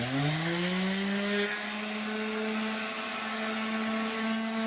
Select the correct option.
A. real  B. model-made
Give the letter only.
A